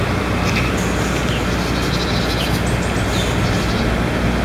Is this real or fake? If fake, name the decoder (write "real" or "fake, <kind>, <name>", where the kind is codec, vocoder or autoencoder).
real